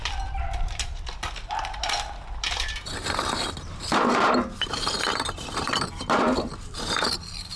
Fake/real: fake